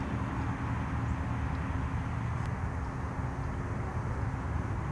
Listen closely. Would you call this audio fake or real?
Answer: real